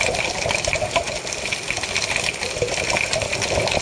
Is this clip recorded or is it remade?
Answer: recorded